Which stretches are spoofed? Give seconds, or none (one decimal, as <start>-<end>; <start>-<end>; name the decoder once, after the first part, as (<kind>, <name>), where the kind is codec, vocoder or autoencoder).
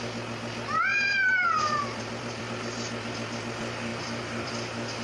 0.9-2.5 (vocoder, BigVGAN v2); 3.9-4.5